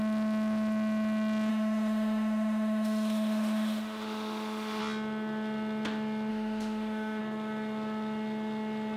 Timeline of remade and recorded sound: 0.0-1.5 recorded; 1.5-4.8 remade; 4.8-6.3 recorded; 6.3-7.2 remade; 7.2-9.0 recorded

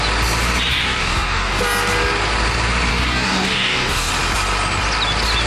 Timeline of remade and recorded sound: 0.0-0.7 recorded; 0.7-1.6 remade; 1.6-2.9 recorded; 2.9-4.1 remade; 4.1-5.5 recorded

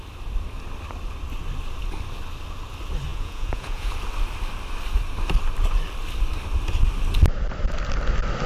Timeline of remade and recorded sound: 0.0-3.1 recorded; 3.1-3.9 remade; 3.9-8.5 recorded